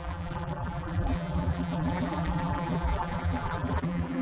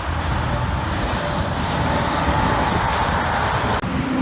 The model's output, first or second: first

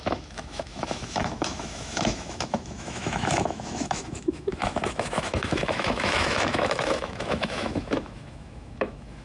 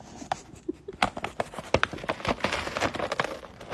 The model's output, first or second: first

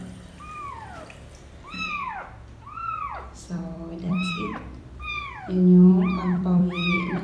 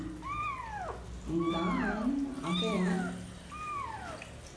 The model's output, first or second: first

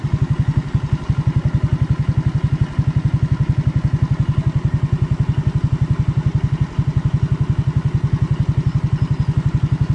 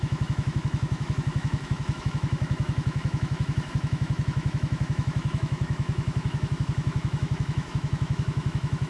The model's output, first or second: second